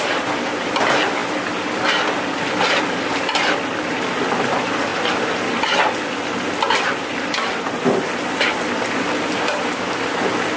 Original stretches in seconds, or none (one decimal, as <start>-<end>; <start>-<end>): 0.0-10.6